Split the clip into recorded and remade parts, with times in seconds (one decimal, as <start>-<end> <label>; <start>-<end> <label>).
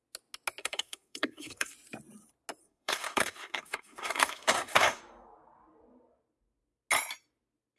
0.0-0.6 recorded; 0.6-1.7 remade; 1.7-2.6 recorded; 2.6-5.0 remade; 5.0-7.8 recorded